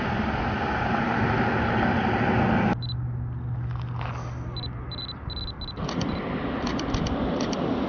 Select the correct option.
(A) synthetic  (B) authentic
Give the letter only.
B